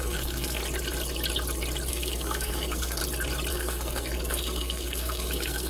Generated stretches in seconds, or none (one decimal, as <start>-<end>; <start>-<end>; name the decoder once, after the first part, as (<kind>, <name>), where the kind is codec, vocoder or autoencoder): 0.0-0.6 (codec, SNAC); 1.9-3.0; 3.5-5.7